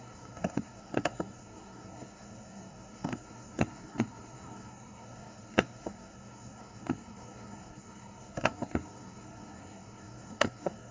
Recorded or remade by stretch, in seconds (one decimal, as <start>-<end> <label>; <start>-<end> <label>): 0.0-10.9 remade